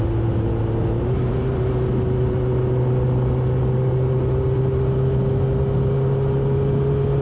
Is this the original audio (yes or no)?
yes